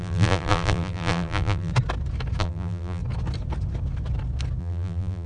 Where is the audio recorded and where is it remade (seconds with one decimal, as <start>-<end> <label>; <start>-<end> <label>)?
0.0-1.7 remade; 1.7-2.4 recorded; 2.4-3.0 remade; 3.0-4.6 recorded; 4.6-5.3 remade